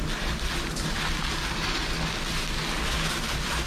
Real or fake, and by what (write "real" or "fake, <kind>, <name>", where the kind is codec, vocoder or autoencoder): real